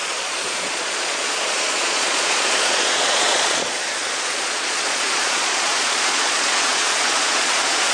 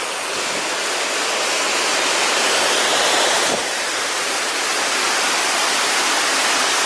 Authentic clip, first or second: second